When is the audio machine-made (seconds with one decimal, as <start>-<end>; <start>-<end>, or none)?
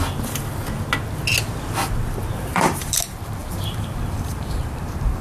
2.5-3.0; 3.4-4.6